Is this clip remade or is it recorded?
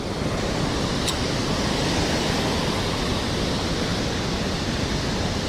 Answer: recorded